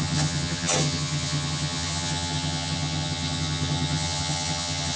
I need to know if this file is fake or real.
fake